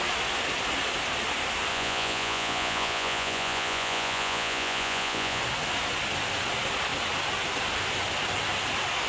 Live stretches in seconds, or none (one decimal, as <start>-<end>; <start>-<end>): 0.0-1.7; 5.4-9.1